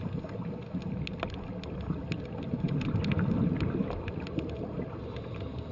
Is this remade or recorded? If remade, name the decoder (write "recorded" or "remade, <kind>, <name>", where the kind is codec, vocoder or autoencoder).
recorded